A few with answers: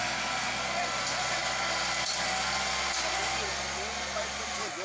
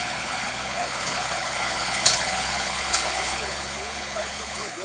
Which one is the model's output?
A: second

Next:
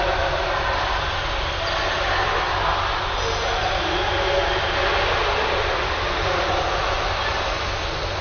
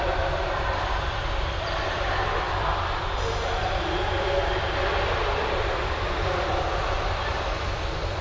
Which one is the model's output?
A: second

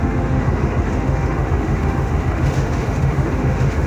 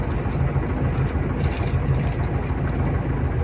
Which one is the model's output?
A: first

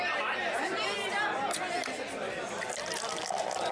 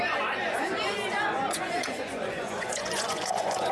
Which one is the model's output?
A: second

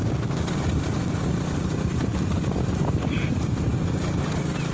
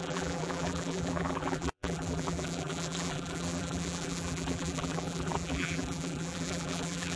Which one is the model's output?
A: second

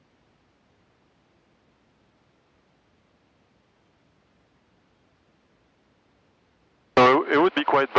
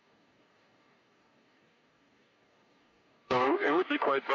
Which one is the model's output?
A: second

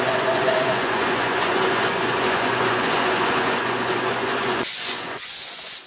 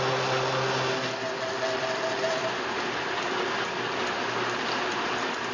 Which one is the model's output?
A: first